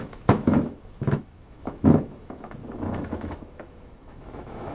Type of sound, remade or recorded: remade